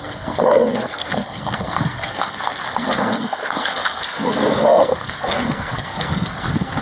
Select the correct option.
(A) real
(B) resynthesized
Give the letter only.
B